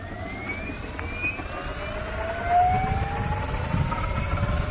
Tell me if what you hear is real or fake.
real